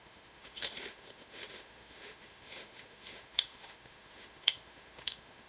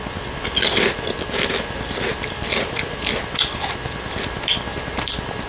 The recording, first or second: second